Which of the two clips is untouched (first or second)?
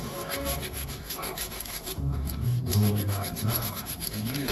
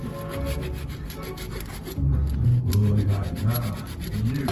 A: second